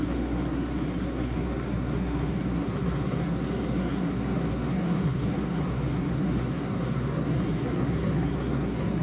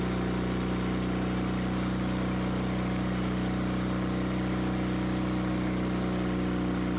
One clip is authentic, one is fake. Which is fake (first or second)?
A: first